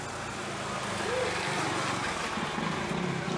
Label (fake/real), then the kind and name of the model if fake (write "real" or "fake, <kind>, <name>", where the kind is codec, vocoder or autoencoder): real